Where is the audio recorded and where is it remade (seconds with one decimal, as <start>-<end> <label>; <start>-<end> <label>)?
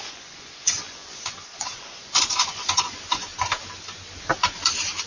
0.0-3.3 remade; 3.3-5.1 recorded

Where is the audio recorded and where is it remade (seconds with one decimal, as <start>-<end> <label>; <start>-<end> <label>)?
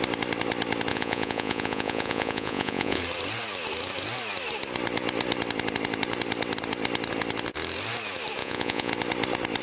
0.0-0.9 recorded; 0.9-3.0 remade; 3.0-8.4 recorded; 8.4-8.9 remade; 8.9-9.6 recorded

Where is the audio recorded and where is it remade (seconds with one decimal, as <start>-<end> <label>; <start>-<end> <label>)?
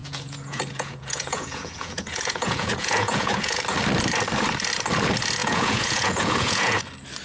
0.0-3.6 remade; 3.6-5.4 recorded; 5.4-6.8 remade; 6.8-7.2 recorded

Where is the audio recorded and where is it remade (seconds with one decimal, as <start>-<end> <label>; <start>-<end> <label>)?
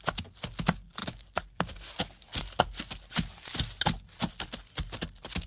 0.0-5.5 recorded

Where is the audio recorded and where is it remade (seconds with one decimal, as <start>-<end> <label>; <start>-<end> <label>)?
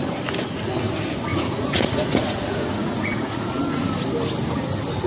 0.0-1.3 recorded; 1.3-3.9 remade; 3.9-5.1 recorded